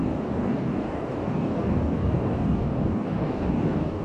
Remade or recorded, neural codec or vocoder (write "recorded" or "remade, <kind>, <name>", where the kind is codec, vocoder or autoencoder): remade, codec, DAC